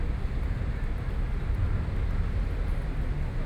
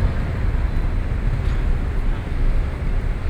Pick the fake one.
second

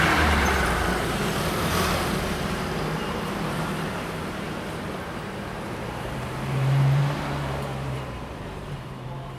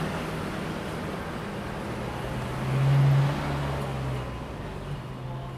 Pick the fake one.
first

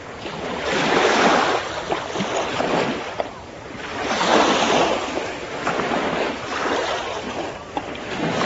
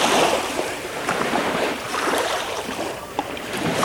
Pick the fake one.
second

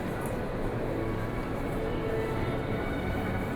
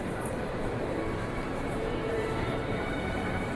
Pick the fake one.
second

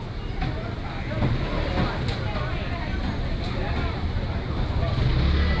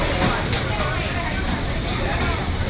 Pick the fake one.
second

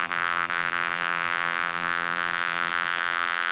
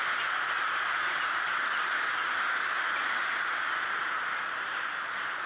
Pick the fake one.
first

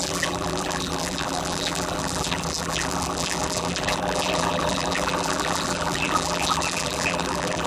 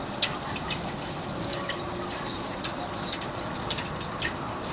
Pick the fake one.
first